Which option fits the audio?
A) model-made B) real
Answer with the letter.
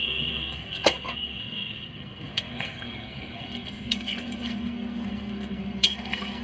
A